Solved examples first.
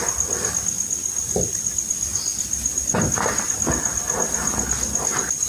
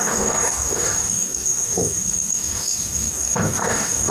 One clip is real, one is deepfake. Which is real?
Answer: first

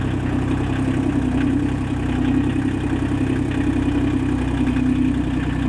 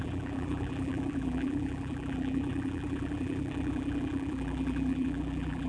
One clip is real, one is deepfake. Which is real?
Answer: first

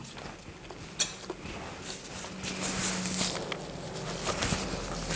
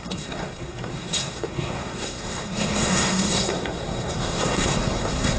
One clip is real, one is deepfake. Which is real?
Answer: first